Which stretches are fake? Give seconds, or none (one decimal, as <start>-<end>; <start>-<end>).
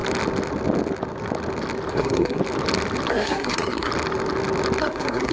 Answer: 1.9-2.4; 3.1-3.9; 4.8-5.3